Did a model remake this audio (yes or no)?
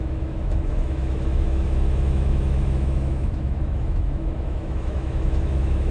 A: yes